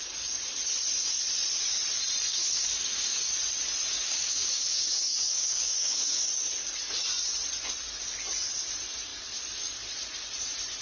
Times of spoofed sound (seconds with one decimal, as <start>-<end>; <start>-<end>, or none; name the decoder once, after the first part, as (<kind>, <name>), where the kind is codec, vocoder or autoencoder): 2.3-3.2 (codec, DAC); 3.9-6.2